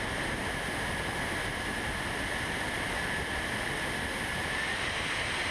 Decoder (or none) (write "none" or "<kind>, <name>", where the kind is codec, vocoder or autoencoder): none